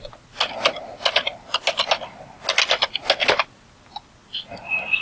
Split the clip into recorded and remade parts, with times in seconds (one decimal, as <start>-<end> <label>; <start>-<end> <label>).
0.0-5.0 recorded